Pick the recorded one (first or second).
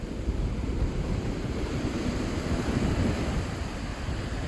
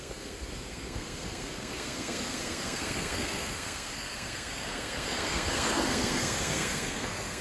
first